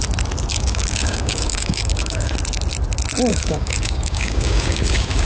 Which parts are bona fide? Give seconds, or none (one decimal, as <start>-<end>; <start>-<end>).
0.0-0.5; 2.3-3.3